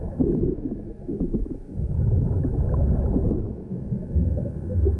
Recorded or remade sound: remade